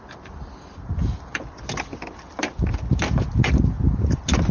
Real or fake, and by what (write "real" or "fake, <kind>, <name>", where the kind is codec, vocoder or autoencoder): real